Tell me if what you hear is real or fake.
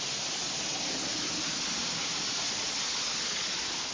real